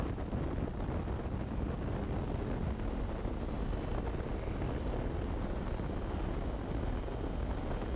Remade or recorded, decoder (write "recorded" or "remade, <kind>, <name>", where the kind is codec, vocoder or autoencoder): recorded